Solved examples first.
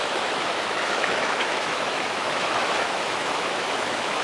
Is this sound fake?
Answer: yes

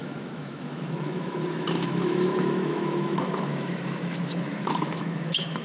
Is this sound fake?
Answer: yes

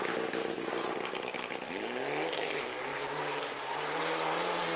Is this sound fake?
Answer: no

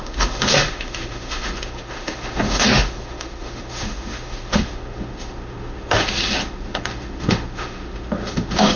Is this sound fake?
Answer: yes